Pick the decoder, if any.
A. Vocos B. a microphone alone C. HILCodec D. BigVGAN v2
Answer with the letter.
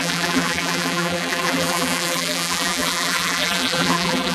D